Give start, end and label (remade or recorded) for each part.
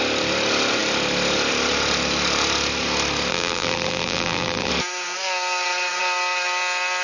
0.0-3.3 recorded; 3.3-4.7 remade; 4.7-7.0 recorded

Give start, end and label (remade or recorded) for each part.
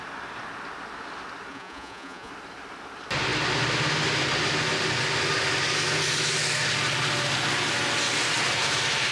0.0-1.5 recorded; 1.5-2.3 remade; 2.3-9.1 recorded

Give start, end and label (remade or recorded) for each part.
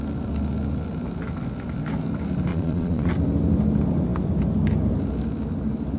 0.0-2.5 recorded; 2.5-3.1 remade; 3.1-6.0 recorded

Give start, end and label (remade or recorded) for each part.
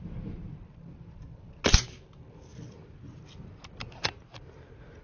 0.0-5.0 recorded